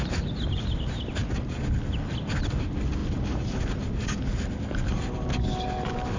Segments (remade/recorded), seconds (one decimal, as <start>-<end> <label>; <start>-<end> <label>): 0.0-6.2 recorded